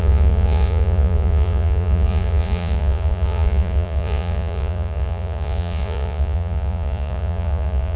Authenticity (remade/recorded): remade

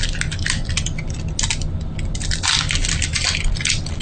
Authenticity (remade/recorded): recorded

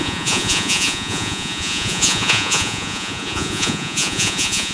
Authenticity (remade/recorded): remade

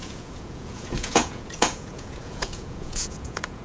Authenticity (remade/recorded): remade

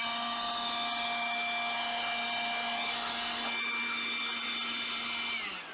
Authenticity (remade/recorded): recorded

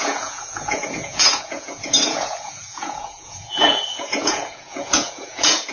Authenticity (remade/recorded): remade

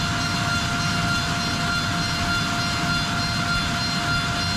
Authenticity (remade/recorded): recorded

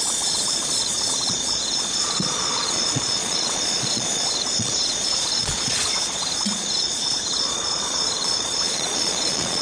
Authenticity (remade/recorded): remade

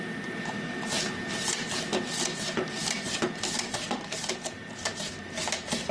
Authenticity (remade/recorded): recorded